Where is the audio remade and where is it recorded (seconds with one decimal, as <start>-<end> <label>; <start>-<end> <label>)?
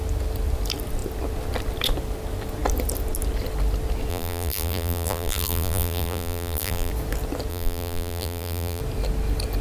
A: 0.0-4.1 recorded; 4.1-6.9 remade; 6.9-7.5 recorded; 7.5-8.8 remade; 8.8-9.6 recorded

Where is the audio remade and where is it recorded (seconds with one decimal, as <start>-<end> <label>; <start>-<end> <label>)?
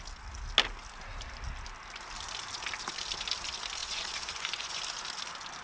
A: 0.0-3.8 recorded; 3.8-4.8 remade; 4.8-5.6 recorded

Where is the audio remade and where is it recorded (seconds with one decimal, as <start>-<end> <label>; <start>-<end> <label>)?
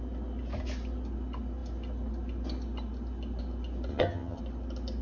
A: 0.0-3.9 recorded; 3.9-4.4 remade; 4.4-5.0 recorded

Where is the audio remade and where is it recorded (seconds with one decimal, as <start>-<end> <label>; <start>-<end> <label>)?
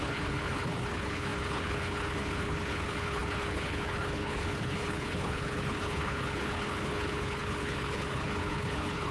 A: 0.0-9.1 remade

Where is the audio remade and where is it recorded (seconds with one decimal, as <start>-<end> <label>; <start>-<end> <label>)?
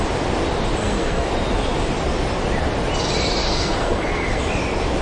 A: 0.0-0.8 recorded; 0.8-1.3 remade; 1.3-3.4 recorded; 3.4-4.4 remade; 4.4-5.0 recorded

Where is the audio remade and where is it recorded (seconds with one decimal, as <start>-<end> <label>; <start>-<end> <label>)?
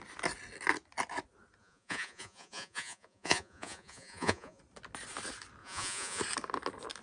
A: 0.0-1.6 recorded; 1.6-4.6 remade; 4.6-5.6 recorded; 5.6-6.2 remade; 6.2-7.0 recorded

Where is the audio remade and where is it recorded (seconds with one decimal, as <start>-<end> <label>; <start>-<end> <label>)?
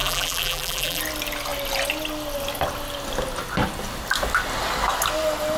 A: 0.0-1.0 remade; 1.0-5.6 recorded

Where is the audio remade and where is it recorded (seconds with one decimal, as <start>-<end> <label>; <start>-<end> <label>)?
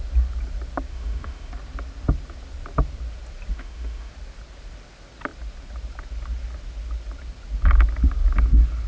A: 0.0-0.9 recorded; 0.9-1.5 remade; 1.5-3.5 recorded; 3.5-4.1 remade; 4.1-8.9 recorded